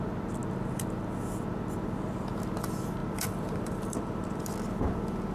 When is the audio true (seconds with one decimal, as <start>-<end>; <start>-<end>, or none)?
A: 0.0-3.0; 4.4-5.3